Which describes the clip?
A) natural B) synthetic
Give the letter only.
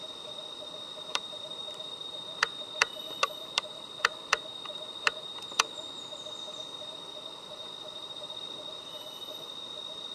B